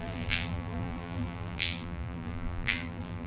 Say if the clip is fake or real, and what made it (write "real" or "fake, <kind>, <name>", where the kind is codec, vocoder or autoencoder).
fake, vocoder, BigVGAN v2